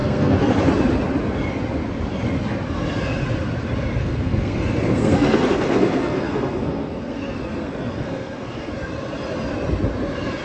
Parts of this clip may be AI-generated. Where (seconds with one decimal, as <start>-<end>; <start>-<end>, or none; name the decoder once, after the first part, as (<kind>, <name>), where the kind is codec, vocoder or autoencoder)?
0.0-0.5 (codec, SNAC); 4.0-8.7